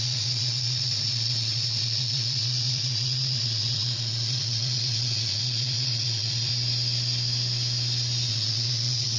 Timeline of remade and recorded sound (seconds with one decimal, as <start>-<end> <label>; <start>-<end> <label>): 0.0-6.5 remade; 6.5-8.3 recorded; 8.3-9.2 remade